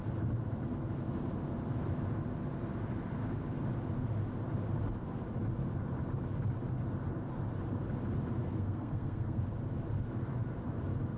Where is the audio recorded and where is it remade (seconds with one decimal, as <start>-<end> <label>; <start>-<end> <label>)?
0.0-8.4 recorded; 8.4-9.4 remade; 9.4-11.2 recorded